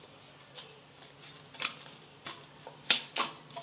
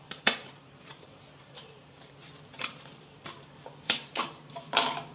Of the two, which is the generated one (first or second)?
second